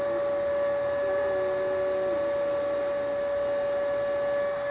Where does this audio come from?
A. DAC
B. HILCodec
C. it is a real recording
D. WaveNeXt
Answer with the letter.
C